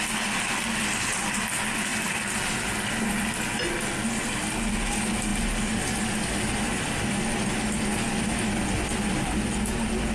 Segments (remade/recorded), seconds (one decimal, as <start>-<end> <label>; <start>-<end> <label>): 0.0-10.1 recorded